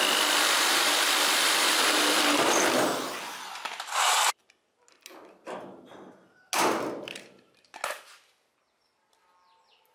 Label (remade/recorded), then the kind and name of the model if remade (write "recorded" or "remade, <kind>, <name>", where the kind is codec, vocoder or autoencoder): recorded